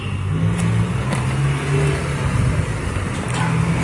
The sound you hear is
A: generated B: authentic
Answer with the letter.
B